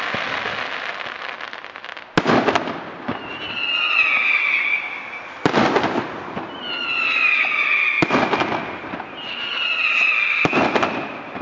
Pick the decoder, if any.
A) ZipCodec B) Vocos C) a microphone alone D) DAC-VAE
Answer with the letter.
C